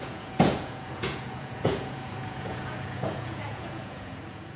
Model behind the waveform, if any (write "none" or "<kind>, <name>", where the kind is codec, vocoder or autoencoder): vocoder, Vocos